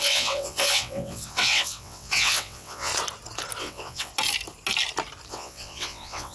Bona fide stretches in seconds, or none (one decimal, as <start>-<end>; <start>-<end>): 2.9-3.6; 4.1-5.3